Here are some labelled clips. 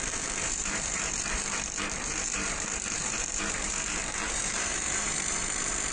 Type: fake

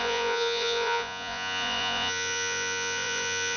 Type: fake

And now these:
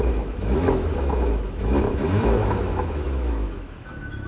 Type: fake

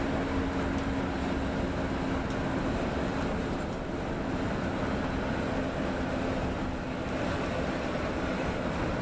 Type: real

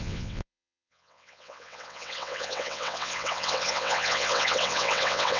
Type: fake